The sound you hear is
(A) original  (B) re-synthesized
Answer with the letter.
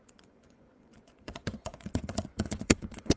B